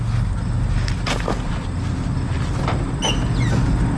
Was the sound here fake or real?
real